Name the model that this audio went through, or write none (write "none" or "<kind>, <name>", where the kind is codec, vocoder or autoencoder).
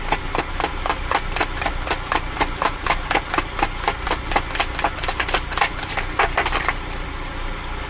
none